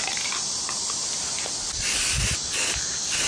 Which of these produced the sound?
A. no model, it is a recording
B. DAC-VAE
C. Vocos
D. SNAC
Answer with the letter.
A